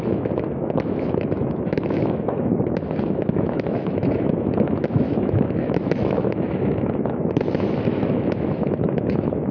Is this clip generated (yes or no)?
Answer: yes